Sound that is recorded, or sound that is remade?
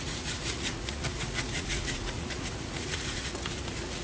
remade